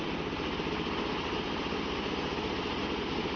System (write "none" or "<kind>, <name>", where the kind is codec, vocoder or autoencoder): none